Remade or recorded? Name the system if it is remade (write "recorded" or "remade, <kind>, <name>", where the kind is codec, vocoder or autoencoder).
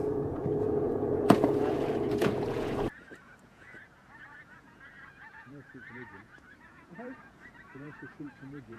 remade, vocoder, Vocos